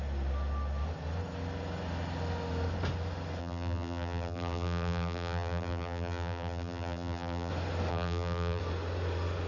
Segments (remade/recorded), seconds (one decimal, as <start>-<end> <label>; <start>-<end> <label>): 0.0-3.4 recorded; 3.4-7.5 remade; 7.5-7.9 recorded; 7.9-8.6 remade; 8.6-9.5 recorded